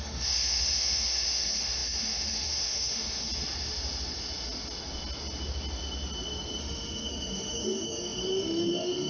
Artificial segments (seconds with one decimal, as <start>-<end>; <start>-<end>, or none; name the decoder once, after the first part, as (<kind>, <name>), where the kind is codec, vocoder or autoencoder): 0.0-3.3 (autoencoder, DAC-VAE); 6.6-9.1